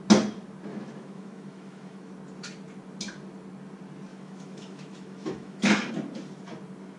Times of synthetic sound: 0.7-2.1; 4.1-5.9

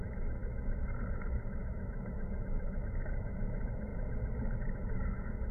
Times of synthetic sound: 0.0-3.9; 4.6-5.5

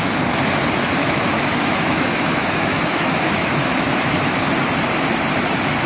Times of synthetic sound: 1.0-4.5

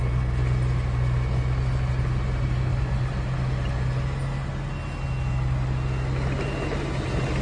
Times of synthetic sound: none

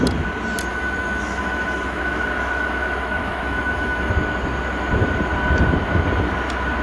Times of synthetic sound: 0.7-4.1

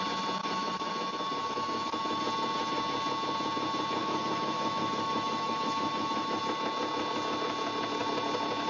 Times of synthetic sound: 0.4-0.9; 1.4-2.2; 4.0-6.4